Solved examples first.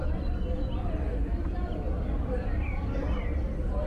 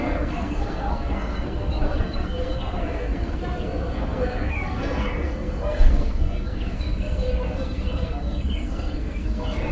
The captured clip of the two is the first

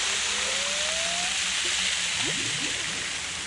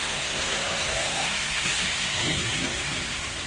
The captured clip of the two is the first